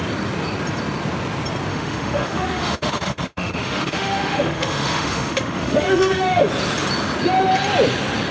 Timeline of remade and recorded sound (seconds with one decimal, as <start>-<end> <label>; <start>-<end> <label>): 0.0-1.7 recorded; 1.7-6.5 remade; 6.5-8.3 recorded